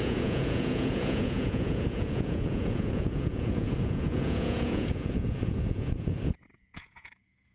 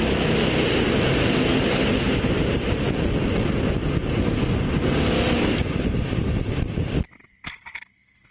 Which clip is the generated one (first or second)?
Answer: first